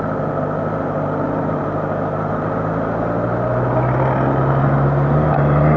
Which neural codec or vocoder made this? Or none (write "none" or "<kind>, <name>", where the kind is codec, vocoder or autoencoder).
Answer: none